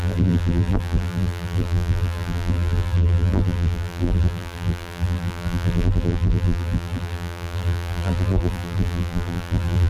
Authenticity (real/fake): fake